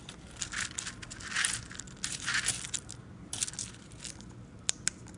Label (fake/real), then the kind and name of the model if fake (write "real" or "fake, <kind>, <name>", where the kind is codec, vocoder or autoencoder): real